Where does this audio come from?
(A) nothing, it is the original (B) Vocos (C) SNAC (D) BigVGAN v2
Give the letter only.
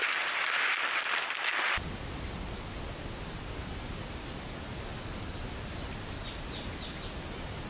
A